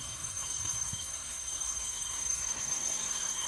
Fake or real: fake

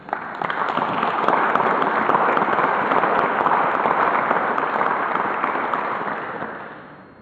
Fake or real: real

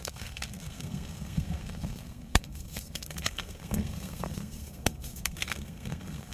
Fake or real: fake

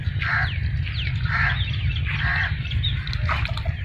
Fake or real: real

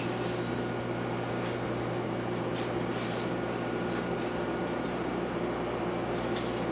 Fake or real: real